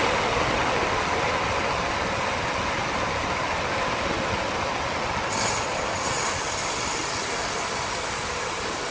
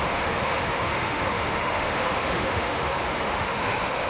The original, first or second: first